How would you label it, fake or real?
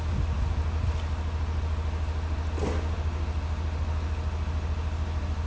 real